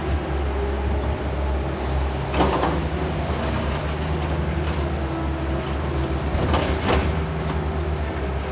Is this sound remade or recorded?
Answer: recorded